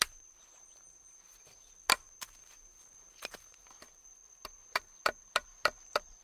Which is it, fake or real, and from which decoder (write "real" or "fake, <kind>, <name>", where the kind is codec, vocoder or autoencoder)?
fake, vocoder, BigVGAN v2